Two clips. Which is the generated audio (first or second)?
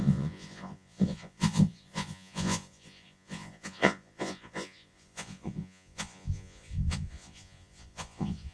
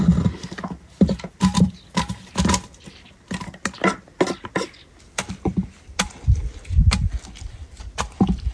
first